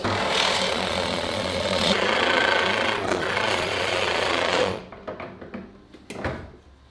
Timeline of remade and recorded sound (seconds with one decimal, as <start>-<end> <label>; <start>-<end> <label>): 0.0-0.7 recorded; 0.7-4.8 remade; 4.8-6.9 recorded